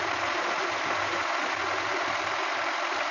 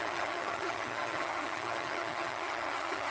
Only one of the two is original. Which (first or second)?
first